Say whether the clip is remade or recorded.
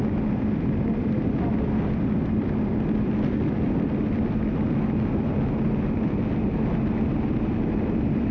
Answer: recorded